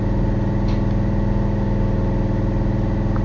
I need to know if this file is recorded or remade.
recorded